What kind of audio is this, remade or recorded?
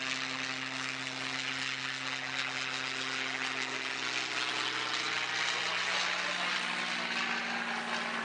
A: recorded